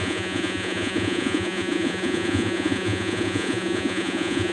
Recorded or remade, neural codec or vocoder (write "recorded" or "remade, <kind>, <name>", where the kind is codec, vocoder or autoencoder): remade, vocoder, Vocos